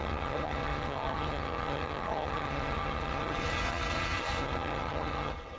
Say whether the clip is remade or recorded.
remade